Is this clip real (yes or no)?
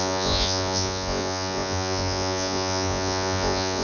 no